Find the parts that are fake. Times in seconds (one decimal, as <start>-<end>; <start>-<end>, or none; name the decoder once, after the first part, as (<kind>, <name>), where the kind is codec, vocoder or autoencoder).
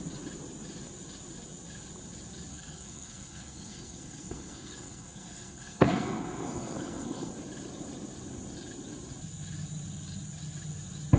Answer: 2.5-7.3 (codec, SNAC)